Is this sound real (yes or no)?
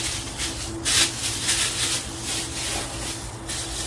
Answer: yes